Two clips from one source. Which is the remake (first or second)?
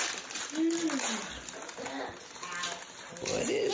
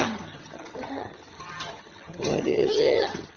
second